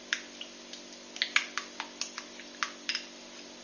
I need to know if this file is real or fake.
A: real